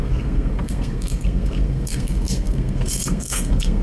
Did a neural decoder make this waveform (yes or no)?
yes